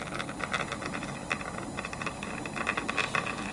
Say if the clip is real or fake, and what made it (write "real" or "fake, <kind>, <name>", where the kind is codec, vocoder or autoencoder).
real